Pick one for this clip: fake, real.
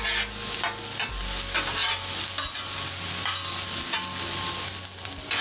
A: real